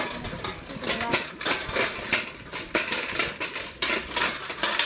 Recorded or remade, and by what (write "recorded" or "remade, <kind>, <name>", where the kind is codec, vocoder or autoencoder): recorded